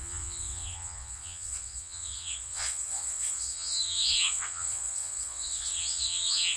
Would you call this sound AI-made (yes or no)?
yes